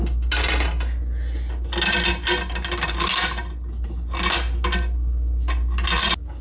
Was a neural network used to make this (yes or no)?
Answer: no